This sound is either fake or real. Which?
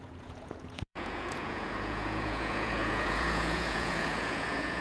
fake